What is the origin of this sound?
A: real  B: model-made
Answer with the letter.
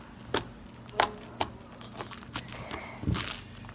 A